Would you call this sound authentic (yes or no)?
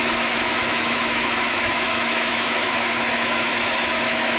no